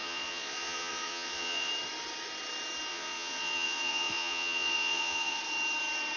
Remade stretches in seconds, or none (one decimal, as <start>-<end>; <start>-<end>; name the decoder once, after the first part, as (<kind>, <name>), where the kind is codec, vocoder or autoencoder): 0.0-1.7 (vocoder, Vocos); 2.9-5.4